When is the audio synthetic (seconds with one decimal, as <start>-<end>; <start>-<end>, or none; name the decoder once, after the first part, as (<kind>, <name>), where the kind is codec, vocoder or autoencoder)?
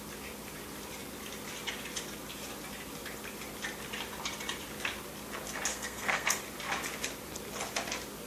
5.7-6.4 (codec, SNAC)